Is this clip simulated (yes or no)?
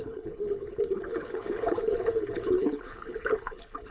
yes